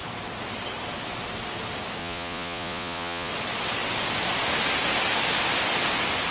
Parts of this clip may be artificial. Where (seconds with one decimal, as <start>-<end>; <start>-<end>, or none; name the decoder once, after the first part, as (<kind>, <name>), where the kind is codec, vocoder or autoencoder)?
2.0-3.3 (vocoder, Vocos)